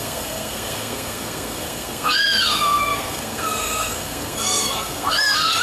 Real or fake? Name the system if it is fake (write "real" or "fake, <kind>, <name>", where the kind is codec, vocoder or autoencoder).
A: fake, codec, SNAC